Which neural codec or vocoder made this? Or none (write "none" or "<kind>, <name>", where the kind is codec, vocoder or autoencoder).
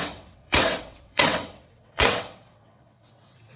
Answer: vocoder, WaveNeXt